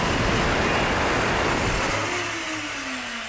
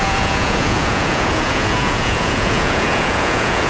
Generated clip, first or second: second